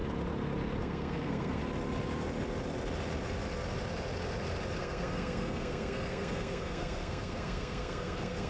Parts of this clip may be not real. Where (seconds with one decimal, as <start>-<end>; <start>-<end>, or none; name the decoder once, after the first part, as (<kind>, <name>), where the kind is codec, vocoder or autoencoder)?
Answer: 0.8-1.6 (codec, SNAC); 4.8-8.5

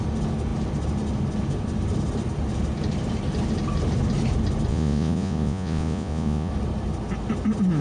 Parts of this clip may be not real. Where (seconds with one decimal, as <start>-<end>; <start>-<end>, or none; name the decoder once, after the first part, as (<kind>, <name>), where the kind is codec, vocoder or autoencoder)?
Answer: 4.7-6.5 (vocoder, Vocos)